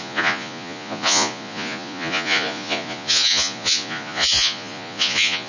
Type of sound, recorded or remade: remade